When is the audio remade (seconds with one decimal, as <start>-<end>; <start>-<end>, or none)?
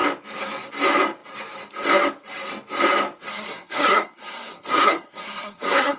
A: 3.3-6.0